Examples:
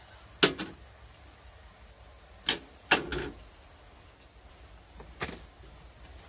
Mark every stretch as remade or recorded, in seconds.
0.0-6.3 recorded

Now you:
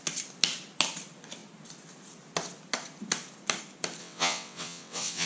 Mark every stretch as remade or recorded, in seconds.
0.0-4.0 recorded; 4.0-5.3 remade

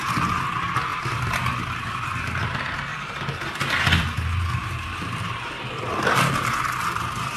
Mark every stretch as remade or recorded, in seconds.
0.0-0.9 recorded; 0.9-1.5 remade; 1.5-2.9 recorded; 2.9-6.1 remade; 6.1-7.4 recorded